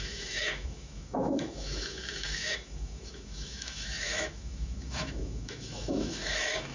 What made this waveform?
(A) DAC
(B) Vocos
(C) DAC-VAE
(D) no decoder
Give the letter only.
C